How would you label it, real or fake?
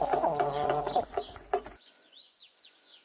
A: fake